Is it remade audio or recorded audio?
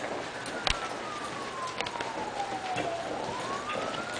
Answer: recorded